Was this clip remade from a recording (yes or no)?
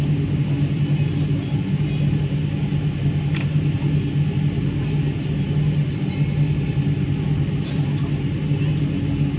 no